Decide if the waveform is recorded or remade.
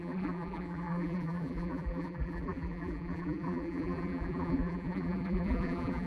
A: remade